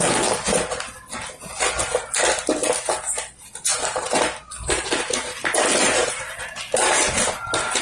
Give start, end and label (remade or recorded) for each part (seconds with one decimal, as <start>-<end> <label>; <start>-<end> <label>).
0.0-7.8 recorded